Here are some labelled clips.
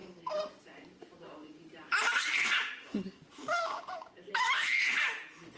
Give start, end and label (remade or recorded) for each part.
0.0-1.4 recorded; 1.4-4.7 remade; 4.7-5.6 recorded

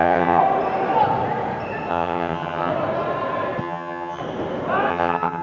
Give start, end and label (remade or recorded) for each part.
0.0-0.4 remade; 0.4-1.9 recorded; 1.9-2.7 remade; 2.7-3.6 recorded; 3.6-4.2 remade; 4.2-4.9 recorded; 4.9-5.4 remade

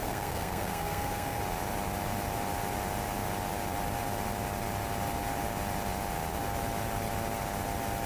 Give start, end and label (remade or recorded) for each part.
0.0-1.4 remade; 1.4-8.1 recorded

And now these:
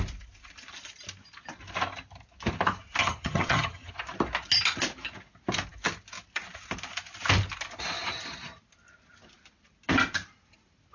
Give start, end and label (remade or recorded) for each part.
0.0-3.0 recorded; 3.0-3.9 remade; 3.9-10.9 recorded

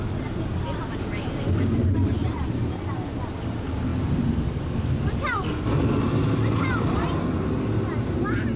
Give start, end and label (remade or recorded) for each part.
0.0-2.2 recorded; 2.2-3.3 remade; 3.3-8.6 recorded

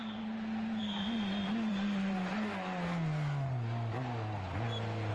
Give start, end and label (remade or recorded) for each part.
0.0-0.8 remade; 0.8-1.7 recorded; 1.7-2.3 remade; 2.3-5.1 recorded